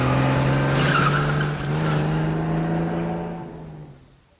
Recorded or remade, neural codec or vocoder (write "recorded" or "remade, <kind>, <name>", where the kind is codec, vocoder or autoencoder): recorded